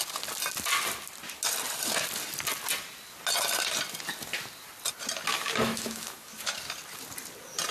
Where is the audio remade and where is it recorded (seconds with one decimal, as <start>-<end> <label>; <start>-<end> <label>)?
0.0-5.3 recorded; 5.3-6.5 remade; 6.5-7.7 recorded